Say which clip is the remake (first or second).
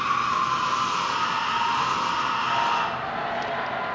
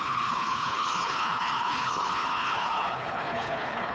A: second